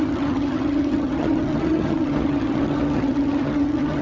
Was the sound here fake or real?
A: fake